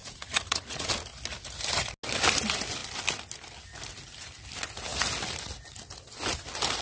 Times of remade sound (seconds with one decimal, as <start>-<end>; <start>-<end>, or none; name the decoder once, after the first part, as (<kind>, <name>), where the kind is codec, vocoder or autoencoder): 0.0-0.9 (vocoder, Vocos)